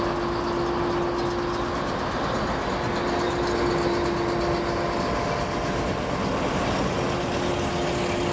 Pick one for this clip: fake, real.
real